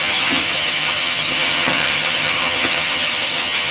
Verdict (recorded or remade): remade